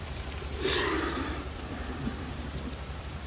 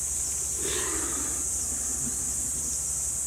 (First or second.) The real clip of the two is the second